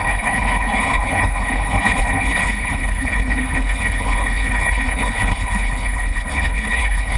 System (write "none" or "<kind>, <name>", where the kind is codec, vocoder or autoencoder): codec, HILCodec